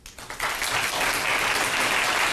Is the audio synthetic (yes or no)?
no